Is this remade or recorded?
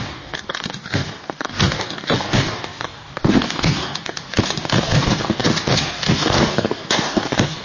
remade